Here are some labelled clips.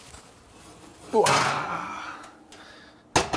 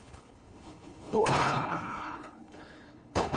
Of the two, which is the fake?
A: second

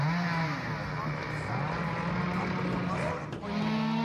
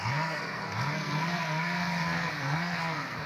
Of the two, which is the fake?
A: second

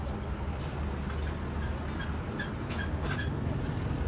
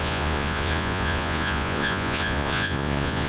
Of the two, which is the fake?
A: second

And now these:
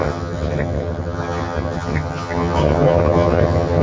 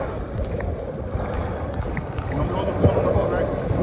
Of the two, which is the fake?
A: first